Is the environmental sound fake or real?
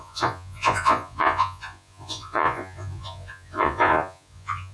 fake